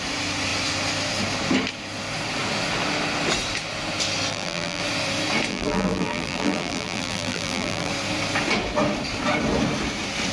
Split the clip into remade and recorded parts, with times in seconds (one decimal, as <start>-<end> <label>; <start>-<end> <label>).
0.0-4.3 recorded; 4.3-4.8 remade; 4.8-5.5 recorded; 5.5-7.9 remade; 7.9-10.3 recorded